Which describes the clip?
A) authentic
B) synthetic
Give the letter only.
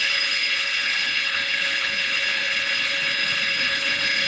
B